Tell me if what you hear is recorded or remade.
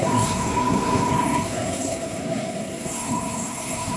remade